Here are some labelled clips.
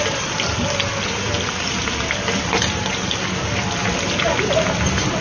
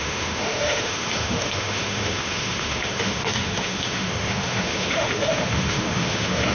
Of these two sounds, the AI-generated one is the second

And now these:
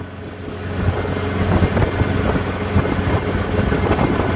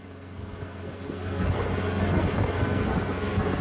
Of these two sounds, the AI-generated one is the second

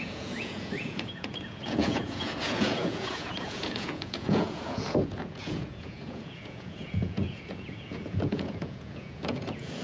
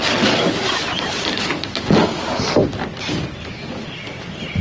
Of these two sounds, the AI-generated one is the first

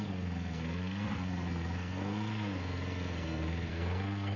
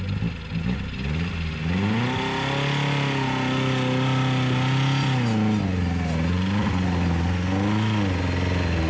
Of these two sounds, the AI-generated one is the first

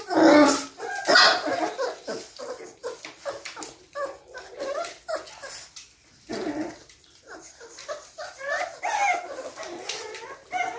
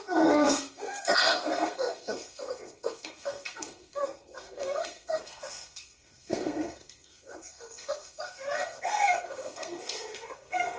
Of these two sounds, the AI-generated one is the second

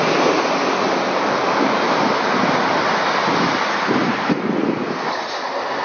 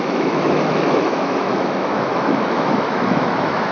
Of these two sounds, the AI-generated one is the second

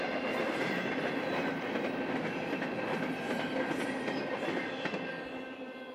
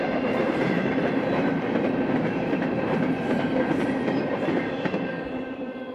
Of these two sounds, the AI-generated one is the second